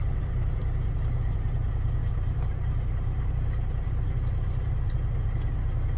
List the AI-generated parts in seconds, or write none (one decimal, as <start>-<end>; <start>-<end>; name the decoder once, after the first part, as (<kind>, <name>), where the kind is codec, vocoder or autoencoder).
0.0-0.6 (vocoder, BigVGAN v2); 2.0-4.9